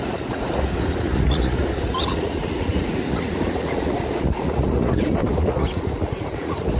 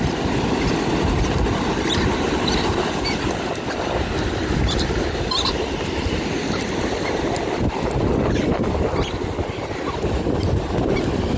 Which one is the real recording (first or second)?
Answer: second